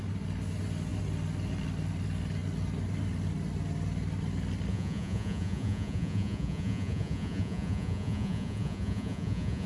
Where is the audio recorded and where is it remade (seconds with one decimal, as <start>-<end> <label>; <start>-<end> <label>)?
0.0-4.7 recorded; 4.7-9.7 remade